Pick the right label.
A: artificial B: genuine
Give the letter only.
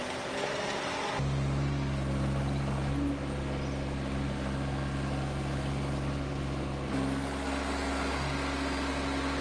B